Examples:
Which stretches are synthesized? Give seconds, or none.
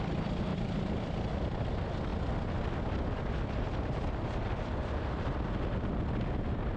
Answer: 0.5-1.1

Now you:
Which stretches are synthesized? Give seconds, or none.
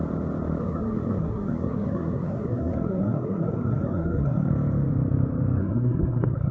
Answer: 0.6-4.5; 5.6-6.5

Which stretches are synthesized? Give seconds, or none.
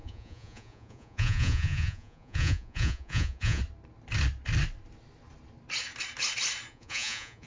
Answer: 0.0-3.6; 6.7-7.5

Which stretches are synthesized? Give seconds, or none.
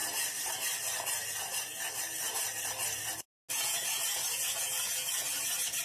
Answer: 3.5-5.8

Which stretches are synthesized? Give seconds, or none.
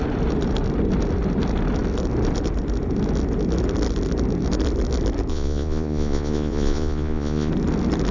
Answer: 5.3-7.5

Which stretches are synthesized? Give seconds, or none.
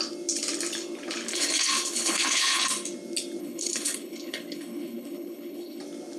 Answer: 1.3-2.6; 3.4-5.8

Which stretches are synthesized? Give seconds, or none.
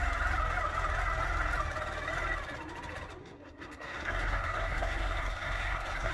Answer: 3.2-6.1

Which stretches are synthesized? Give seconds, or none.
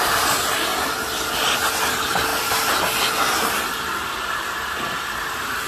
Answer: 2.3-5.7